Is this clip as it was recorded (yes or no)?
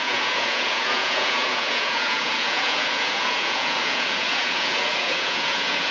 no